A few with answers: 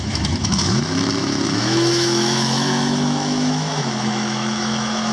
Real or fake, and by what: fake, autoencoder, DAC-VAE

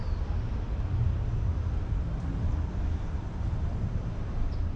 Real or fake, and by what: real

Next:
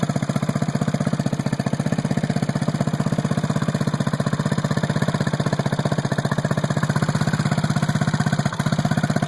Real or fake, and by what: real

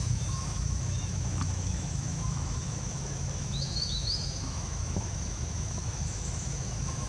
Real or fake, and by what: fake, autoencoder, DAC-VAE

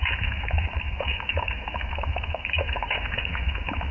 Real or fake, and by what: fake, autoencoder, DAC-VAE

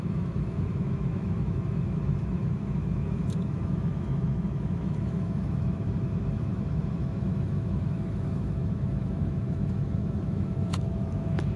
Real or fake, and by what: fake, autoencoder, DAC-VAE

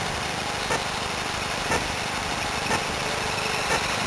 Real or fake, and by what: real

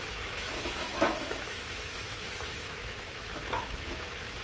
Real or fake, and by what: fake, autoencoder, DAC-VAE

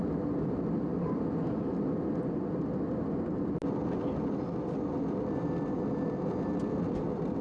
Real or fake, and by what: real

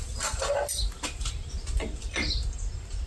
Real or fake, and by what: real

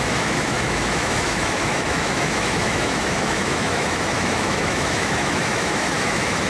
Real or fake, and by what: fake, autoencoder, DAC-VAE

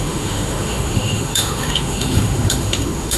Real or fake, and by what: fake, autoencoder, DAC-VAE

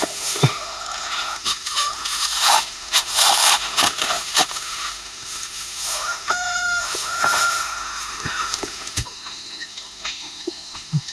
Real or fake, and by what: fake, autoencoder, DAC-VAE